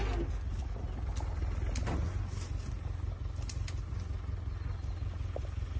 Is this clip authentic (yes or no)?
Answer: yes